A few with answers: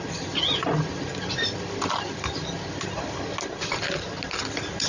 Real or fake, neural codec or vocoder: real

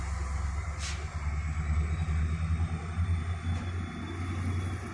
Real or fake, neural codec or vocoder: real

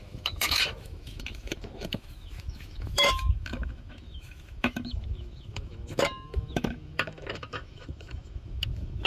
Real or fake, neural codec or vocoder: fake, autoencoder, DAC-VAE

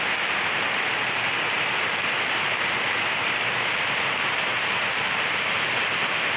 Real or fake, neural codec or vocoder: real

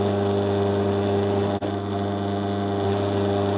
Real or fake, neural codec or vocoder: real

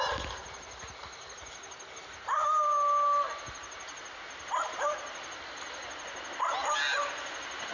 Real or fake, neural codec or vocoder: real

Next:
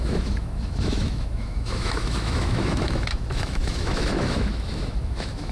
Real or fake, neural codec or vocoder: fake, autoencoder, DAC-VAE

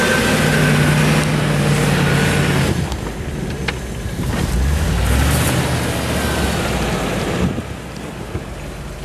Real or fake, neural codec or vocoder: real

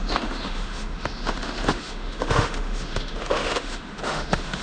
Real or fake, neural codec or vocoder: fake, autoencoder, DAC-VAE